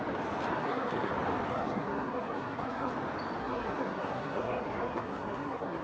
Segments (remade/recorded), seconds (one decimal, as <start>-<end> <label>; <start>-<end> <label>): 0.0-0.5 recorded; 0.5-1.1 remade; 1.1-1.5 recorded; 1.5-2.9 remade; 2.9-3.4 recorded; 3.4-5.8 remade